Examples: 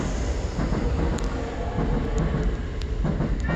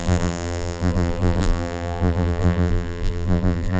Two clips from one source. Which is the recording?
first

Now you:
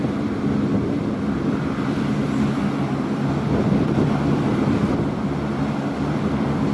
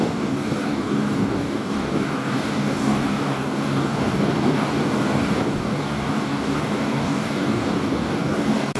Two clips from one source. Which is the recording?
first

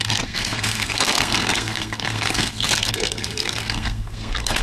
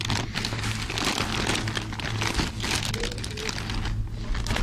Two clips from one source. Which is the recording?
second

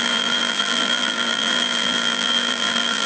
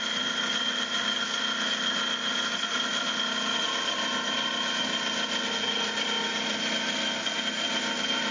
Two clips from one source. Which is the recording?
second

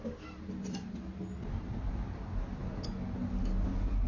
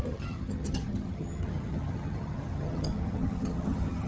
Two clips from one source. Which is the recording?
first